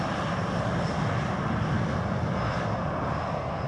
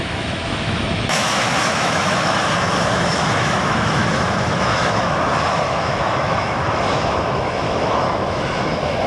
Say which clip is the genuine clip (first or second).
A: first